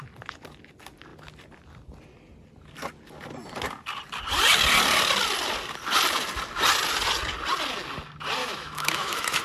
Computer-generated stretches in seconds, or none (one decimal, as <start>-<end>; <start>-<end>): 8.4-9.4